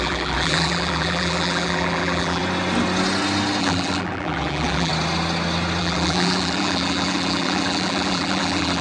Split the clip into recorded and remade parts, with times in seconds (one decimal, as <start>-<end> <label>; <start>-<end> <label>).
0.0-2.4 remade; 2.4-3.6 recorded; 3.6-4.9 remade; 4.9-5.8 recorded; 5.8-8.8 remade